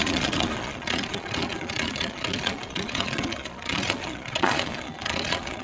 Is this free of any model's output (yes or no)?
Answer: no